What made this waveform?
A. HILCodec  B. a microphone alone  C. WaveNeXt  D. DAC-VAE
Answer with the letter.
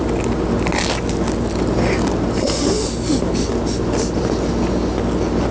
B